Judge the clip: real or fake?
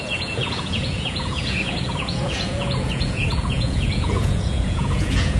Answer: fake